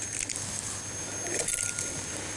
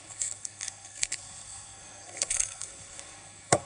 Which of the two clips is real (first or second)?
first